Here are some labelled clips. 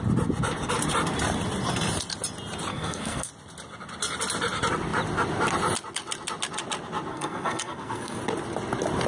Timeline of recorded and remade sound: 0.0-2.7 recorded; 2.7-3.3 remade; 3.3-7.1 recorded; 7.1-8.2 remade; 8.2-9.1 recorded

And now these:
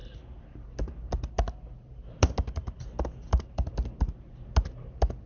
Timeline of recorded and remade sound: 0.0-5.3 recorded

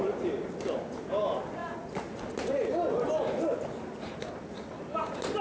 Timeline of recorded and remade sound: 0.0-5.4 recorded

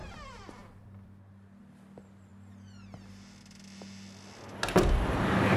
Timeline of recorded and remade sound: 0.0-1.6 remade; 1.6-5.6 recorded

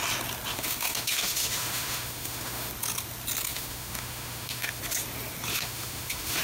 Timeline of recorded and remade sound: 0.0-0.5 recorded; 0.5-2.7 remade; 2.7-3.5 recorded; 3.5-4.8 remade; 4.8-5.5 recorded; 5.5-6.4 remade

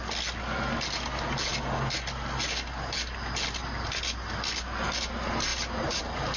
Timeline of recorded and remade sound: 0.0-5.5 recorded; 5.5-6.0 remade; 6.0-6.4 recorded

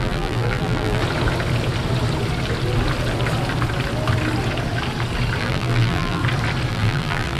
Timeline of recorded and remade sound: 0.0-1.0 remade; 1.0-5.4 recorded; 5.4-6.2 remade; 6.2-6.7 recorded; 6.7-7.4 remade

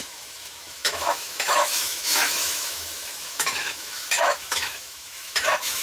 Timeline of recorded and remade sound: 0.0-5.8 remade